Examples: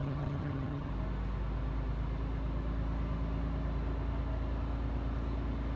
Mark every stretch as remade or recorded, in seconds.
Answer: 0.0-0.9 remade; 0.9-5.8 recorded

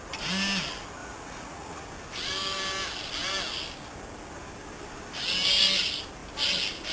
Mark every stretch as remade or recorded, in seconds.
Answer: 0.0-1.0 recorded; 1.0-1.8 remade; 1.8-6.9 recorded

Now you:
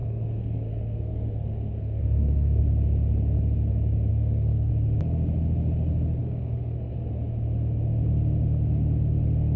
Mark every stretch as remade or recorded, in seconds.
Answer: 0.0-2.6 remade; 2.6-4.1 recorded; 4.1-4.7 remade; 4.7-6.2 recorded; 6.2-7.1 remade; 7.1-9.6 recorded

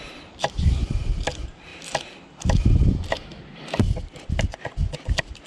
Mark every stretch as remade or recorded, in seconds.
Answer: 0.0-4.5 recorded; 4.5-5.0 remade; 5.0-5.5 recorded

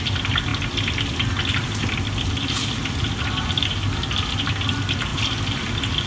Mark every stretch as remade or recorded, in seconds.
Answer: 0.0-6.1 recorded

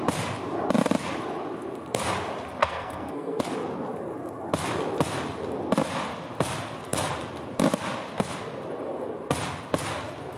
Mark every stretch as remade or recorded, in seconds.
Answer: 0.0-2.6 recorded; 2.6-3.4 remade; 3.4-10.4 recorded